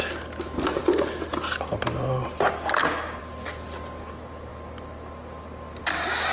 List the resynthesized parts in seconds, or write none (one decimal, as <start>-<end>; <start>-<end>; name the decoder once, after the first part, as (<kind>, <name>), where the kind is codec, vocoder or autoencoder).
none